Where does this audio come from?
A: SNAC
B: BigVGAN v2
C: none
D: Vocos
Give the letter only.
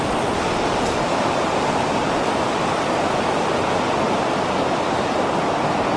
C